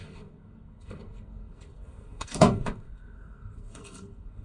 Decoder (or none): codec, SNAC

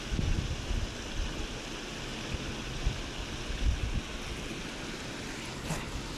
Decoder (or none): none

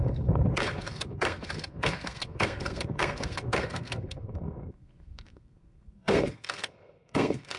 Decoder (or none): codec, SNAC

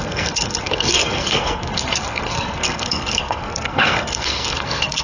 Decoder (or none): codec, SNAC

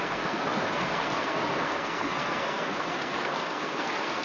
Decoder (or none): codec, SNAC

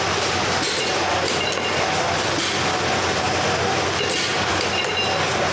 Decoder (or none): none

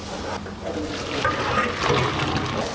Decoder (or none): none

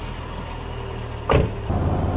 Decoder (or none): none